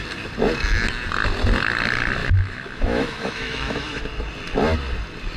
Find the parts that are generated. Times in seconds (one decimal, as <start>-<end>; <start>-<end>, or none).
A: 2.2-4.0